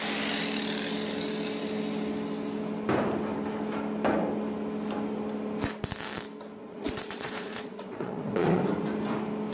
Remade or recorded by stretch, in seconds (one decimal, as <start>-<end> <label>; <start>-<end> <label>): 0.0-6.6 recorded; 6.6-8.6 remade; 8.6-9.5 recorded